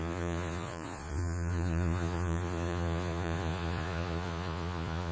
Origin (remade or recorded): remade